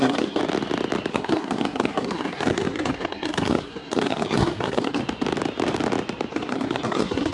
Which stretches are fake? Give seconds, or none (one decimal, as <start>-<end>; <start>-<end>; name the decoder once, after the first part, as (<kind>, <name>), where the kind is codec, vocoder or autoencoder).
0.0-0.4 (codec, SNAC); 1.1-5.0; 6.3-7.3